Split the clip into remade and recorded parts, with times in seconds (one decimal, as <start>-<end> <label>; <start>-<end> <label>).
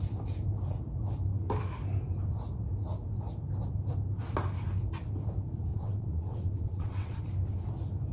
0.0-5.7 recorded; 5.7-7.2 remade; 7.2-8.1 recorded